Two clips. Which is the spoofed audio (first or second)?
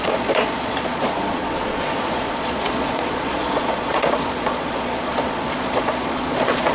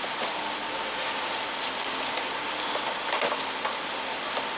first